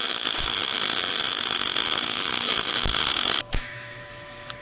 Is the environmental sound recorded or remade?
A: remade